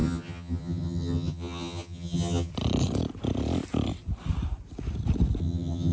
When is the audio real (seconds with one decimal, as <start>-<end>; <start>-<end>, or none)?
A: 2.5-5.4